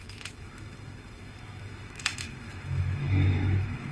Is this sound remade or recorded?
remade